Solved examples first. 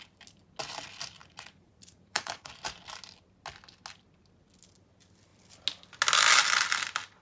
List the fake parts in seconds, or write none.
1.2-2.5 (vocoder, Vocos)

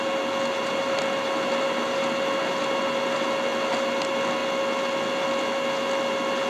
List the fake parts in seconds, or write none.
none

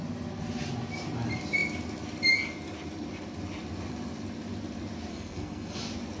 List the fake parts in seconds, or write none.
5.1-5.8 (codec, SNAC)

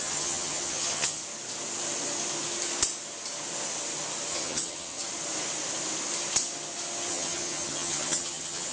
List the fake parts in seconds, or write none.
0.0-1.2 (vocoder, HiFi-GAN); 4.3-5.0; 7.1-8.7

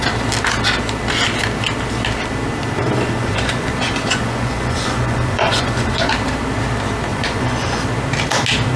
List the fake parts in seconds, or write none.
2.8-6.1 (vocoder, Vocos); 7.1-7.8

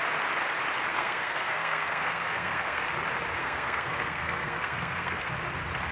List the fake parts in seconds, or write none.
0.9-2.8 (codec, SNAC); 3.4-5.3

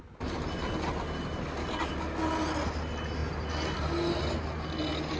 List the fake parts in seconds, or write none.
none